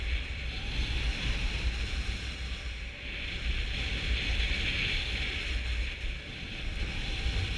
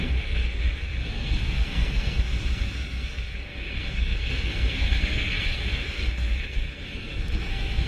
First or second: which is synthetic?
second